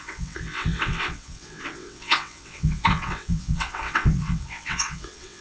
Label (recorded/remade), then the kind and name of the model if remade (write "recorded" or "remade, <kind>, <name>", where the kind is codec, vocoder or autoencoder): remade, vocoder, WaveNeXt